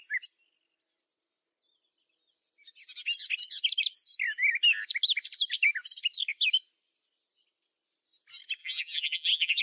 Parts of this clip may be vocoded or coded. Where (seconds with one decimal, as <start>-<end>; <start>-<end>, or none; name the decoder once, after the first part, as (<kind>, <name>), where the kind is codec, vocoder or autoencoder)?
8.6-9.6 (vocoder, BigVGAN v2)